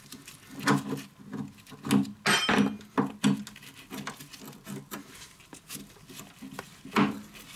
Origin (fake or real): real